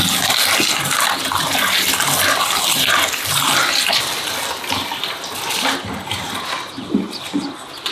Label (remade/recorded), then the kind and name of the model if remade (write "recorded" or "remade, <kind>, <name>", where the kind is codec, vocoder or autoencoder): recorded